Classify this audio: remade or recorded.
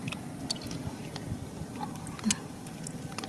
recorded